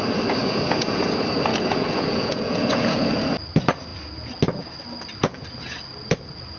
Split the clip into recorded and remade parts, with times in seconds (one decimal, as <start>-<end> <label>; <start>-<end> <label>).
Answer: 0.0-0.4 recorded; 0.4-1.0 remade; 1.0-1.5 recorded; 1.5-3.1 remade; 3.1-6.6 recorded